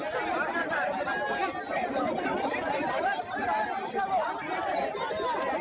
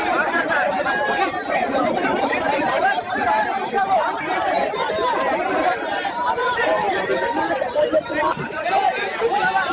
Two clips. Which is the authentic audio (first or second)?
first